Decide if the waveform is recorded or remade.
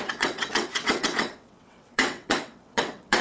remade